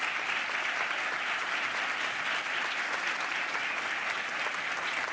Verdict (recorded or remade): recorded